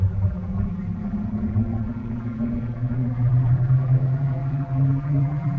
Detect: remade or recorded remade